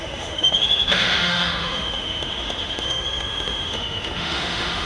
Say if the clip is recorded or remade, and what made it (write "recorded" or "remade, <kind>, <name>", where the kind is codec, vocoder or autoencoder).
remade, autoencoder, DAC-VAE